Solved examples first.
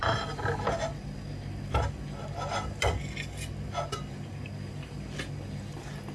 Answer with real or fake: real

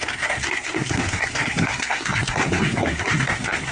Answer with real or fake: fake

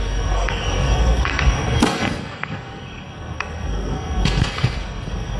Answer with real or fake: fake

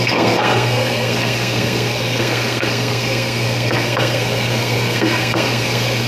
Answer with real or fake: fake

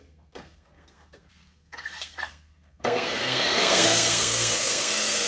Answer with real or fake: fake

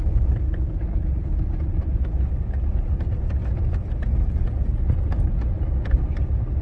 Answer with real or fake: real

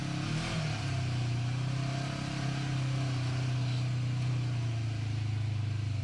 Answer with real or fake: real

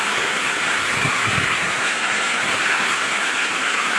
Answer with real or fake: fake